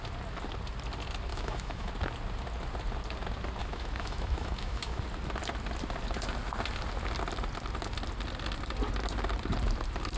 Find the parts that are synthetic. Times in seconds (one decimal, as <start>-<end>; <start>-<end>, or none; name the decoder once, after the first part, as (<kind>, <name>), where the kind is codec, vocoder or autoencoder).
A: 1.3-1.9 (autoencoder, DAC-VAE); 3.6-5.0